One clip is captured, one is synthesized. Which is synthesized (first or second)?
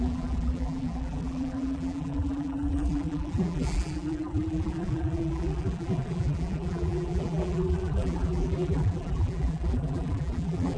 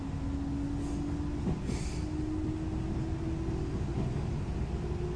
first